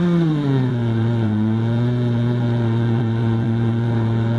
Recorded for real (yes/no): no